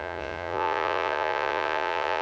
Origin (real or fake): fake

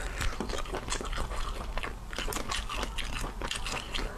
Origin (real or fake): real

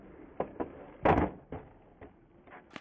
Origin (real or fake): real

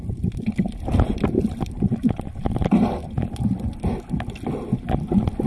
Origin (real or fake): real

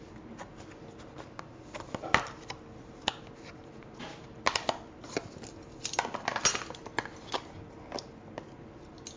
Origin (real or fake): real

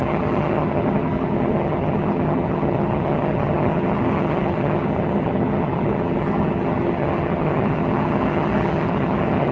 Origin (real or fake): fake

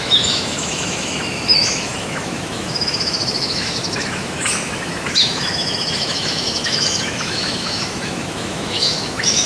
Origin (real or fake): fake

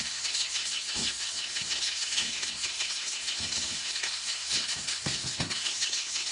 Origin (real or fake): fake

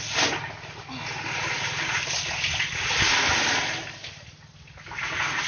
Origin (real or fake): real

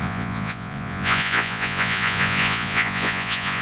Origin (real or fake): fake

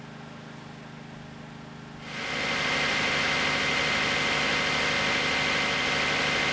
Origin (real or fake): real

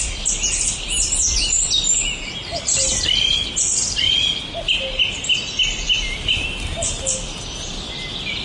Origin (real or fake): real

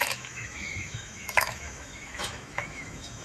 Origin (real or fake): fake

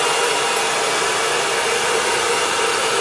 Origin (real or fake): real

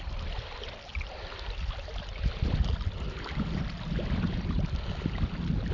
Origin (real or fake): real